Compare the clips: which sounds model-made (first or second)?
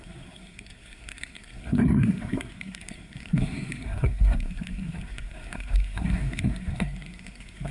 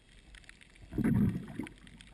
first